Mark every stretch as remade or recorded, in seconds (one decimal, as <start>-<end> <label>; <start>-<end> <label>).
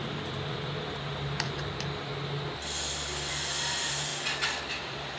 0.0-2.1 remade; 2.1-3.3 recorded; 3.3-4.1 remade; 4.1-4.8 recorded; 4.8-5.2 remade